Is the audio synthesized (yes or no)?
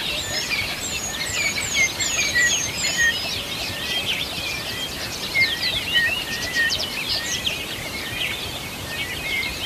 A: yes